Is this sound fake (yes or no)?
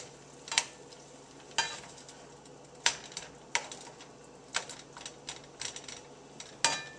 no